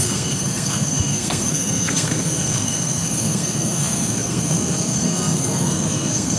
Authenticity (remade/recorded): remade